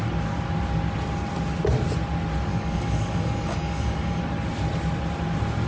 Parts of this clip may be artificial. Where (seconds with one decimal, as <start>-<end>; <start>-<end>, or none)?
2.5-4.2